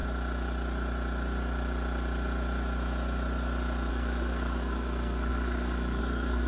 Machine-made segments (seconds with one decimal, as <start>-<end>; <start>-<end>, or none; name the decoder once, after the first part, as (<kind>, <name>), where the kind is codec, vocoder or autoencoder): 3.9-6.5 (codec, SNAC)